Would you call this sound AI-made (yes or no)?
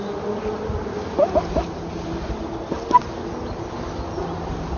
no